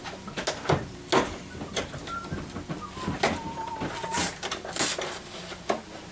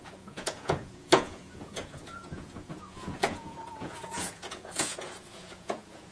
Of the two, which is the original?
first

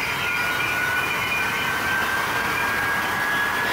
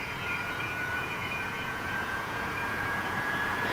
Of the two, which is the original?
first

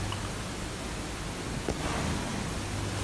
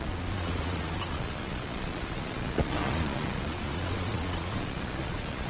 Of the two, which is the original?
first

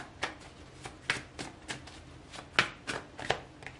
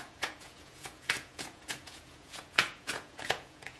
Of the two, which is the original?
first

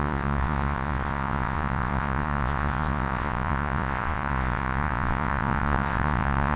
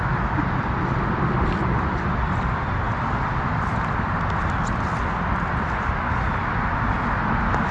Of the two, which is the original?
second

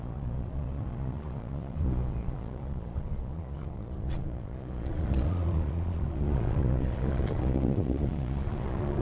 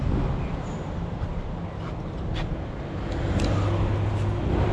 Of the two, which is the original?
second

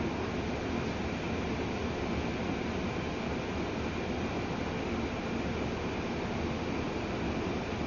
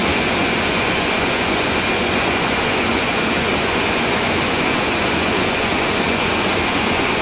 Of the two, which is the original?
first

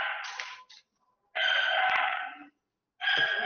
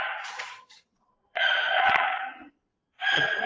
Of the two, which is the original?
first